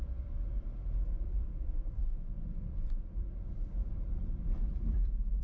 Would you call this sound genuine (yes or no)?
no